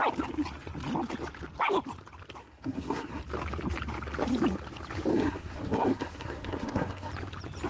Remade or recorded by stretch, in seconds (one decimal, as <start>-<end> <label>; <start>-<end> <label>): 0.0-2.4 recorded; 2.4-3.2 remade; 3.2-5.1 recorded; 5.1-7.1 remade; 7.1-7.7 recorded